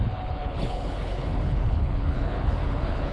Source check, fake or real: fake